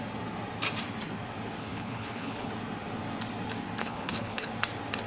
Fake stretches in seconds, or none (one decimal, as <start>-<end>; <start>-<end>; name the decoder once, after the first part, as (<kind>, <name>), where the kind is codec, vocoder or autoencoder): 1.6-2.5 (codec, HILCodec); 3.8-4.5